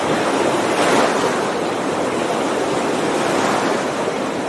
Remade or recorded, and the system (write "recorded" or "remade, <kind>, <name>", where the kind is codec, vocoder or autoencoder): remade, vocoder, BigVGAN v2